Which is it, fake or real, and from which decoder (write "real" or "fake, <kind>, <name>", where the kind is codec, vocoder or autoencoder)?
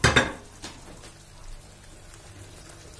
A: real